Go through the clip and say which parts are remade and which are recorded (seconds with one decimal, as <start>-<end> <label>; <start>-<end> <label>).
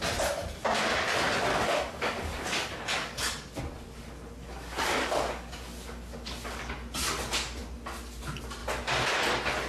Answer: 0.0-1.5 recorded; 1.5-3.6 remade; 3.6-4.4 recorded; 4.4-6.7 remade; 6.7-9.7 recorded